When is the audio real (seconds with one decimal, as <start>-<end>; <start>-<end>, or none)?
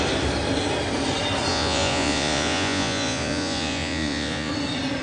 0.0-1.5; 4.5-5.0